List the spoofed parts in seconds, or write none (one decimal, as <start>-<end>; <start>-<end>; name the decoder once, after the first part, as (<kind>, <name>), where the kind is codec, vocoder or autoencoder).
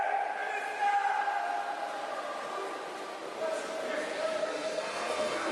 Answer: 4.4-5.5 (codec, SNAC)